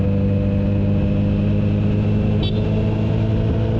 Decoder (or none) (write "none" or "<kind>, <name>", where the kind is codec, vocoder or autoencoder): none